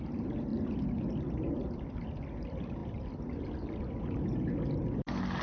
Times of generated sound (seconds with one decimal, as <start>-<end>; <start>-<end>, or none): none